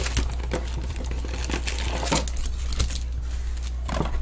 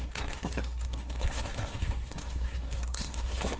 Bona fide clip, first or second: first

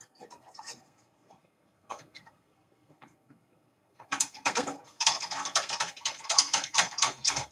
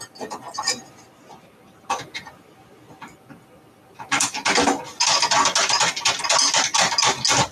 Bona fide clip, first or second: second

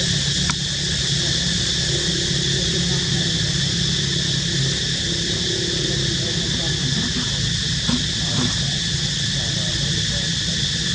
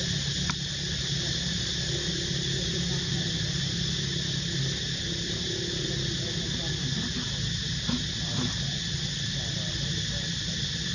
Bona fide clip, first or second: first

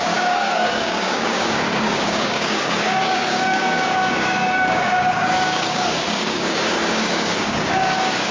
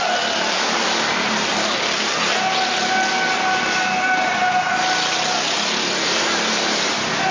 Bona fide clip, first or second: second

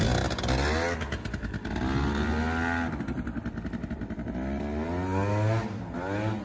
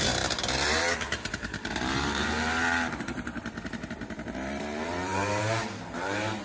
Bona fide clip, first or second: first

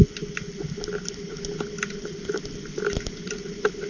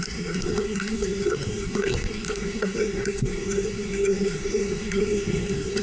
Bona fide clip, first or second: first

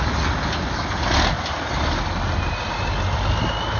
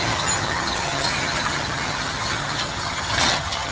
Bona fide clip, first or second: first